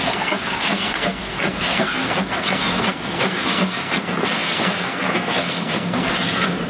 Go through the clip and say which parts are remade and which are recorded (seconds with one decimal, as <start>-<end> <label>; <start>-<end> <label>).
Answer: 0.0-6.7 remade